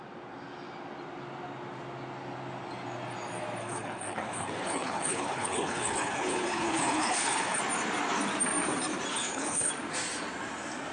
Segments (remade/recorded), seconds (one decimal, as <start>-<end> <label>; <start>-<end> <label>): 0.0-3.6 recorded; 3.6-7.6 remade; 7.6-9.1 recorded; 9.1-9.7 remade; 9.7-10.9 recorded